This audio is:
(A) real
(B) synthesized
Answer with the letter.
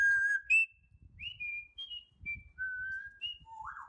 A